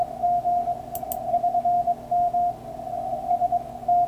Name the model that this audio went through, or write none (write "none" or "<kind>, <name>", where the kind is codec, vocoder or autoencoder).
none